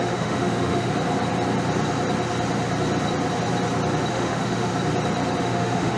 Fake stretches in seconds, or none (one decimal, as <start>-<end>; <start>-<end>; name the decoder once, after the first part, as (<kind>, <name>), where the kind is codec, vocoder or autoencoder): 0.0-0.9 (autoencoder, DAC-VAE); 4.1-4.7; 5.4-6.0